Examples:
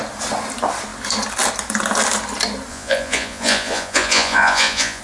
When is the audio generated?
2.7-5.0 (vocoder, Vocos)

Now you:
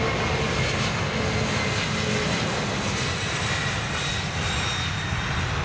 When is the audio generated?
3.6-4.1 (vocoder, BigVGAN v2)